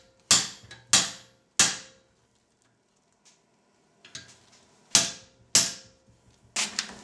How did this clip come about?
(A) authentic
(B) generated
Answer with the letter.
A